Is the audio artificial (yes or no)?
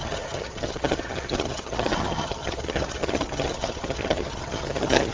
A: yes